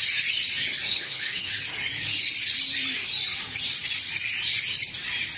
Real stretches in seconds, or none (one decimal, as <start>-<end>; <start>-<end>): 0.0-0.9; 1.5-5.4